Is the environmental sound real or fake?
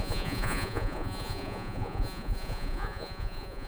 fake